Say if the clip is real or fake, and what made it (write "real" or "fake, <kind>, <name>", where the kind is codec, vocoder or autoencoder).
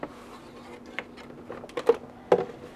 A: real